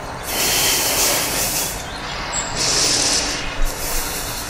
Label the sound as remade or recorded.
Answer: recorded